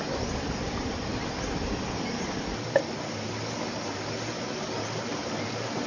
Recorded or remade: recorded